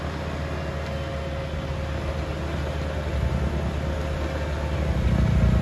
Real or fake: real